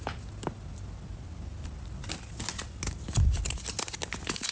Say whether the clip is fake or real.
real